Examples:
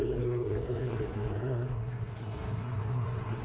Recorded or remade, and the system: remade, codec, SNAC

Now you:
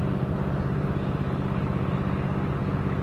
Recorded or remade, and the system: recorded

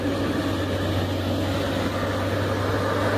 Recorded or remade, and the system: recorded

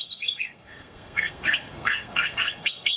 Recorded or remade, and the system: remade, codec, SNAC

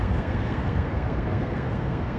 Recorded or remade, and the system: remade, codec, SNAC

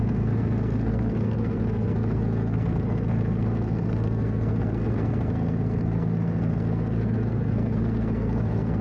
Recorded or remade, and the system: remade, codec, SNAC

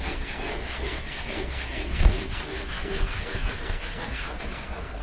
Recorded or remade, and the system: remade, codec, SNAC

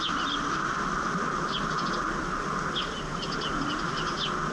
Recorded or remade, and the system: recorded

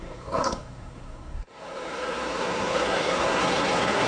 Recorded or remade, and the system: remade, codec, SNAC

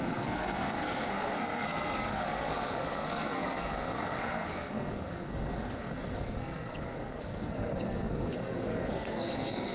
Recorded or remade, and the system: remade, codec, SNAC